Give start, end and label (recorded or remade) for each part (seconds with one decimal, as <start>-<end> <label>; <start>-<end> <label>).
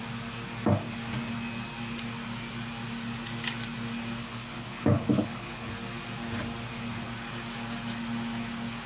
0.0-4.2 recorded; 4.2-5.7 remade; 5.7-8.9 recorded